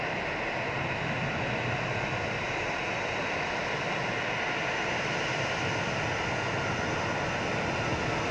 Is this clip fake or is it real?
real